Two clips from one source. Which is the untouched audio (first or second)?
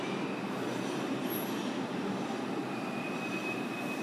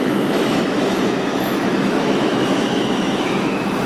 first